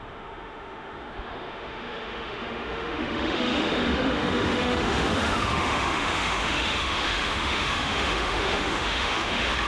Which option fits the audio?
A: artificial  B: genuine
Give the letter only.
A